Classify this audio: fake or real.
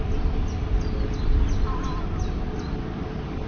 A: real